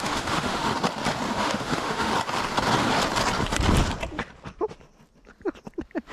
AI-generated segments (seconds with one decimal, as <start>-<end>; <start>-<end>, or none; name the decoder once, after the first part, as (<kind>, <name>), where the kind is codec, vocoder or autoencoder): 0.0-0.7 (autoencoder, DAC-VAE); 1.3-2.1

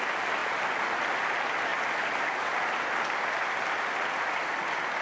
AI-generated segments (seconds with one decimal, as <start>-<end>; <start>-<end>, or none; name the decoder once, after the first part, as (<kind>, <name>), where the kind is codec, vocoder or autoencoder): none